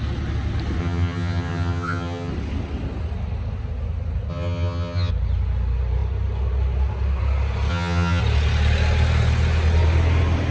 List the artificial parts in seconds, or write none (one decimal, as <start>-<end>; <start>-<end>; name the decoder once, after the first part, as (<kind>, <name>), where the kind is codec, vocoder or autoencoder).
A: 0.8-2.3 (vocoder, HiFi-GAN); 4.3-5.1; 7.7-8.2